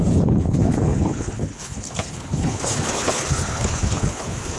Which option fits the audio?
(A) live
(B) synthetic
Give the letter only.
B